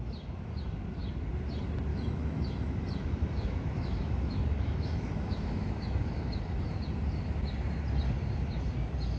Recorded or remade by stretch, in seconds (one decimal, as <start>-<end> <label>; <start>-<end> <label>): 0.0-1.9 recorded; 1.9-6.8 remade; 6.8-9.2 recorded